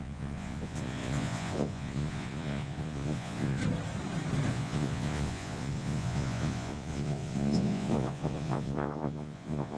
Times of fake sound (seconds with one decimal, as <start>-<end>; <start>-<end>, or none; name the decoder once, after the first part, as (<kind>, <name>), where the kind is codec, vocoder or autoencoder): 0.0-3.6 (vocoder, Vocos); 4.5-9.8